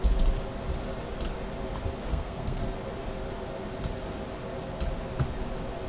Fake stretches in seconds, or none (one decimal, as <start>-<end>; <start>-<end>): 2.0-2.6